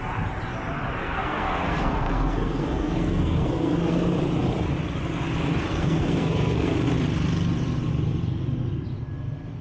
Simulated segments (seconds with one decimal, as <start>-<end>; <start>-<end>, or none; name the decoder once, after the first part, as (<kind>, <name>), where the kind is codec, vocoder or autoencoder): 1.0-4.0 (codec, SNAC); 5.7-6.7